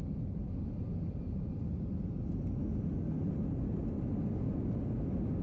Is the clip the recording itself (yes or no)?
yes